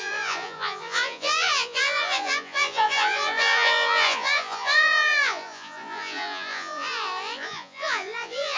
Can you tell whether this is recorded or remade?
remade